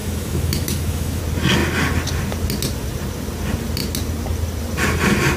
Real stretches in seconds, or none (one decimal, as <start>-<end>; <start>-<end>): 1.2-5.4